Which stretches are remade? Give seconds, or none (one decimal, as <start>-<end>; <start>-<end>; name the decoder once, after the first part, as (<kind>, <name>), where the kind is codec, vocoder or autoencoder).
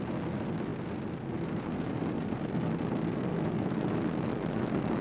3.3-5.0 (autoencoder, DAC-VAE)